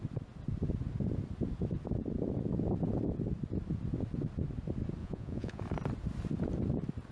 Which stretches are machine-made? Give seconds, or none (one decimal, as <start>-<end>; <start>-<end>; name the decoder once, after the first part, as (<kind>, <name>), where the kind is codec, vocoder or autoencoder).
5.0-5.6 (vocoder, Vocos)